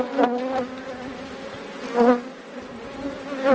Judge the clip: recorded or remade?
recorded